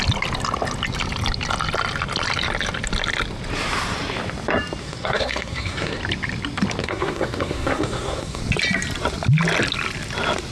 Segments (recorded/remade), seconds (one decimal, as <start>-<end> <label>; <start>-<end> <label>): 0.0-4.8 recorded; 4.8-6.0 remade; 6.0-6.8 recorded; 6.8-8.4 remade; 8.4-10.5 recorded